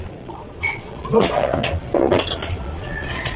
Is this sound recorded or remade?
remade